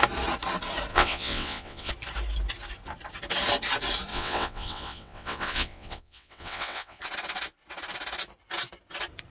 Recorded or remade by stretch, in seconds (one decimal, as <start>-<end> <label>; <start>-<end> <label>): 0.0-0.9 recorded; 0.9-1.9 remade; 1.9-4.1 recorded; 4.1-7.0 remade; 7.0-9.3 recorded